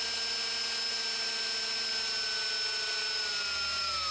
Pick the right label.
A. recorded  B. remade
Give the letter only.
A